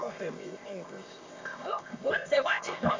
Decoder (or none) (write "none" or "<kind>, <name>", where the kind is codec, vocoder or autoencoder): codec, ZipCodec